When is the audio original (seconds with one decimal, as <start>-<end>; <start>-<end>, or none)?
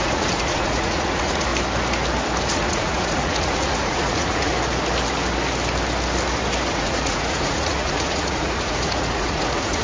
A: 1.5-2.4; 4.5-6.7